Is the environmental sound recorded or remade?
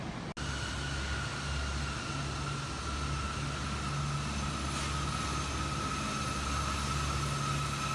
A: recorded